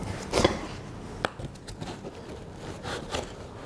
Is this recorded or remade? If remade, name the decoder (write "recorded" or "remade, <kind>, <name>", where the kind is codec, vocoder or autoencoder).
recorded